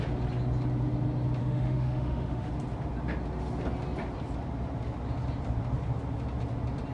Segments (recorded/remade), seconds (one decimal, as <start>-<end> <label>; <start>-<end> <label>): 0.0-1.4 recorded; 1.4-2.5 remade; 2.5-6.9 recorded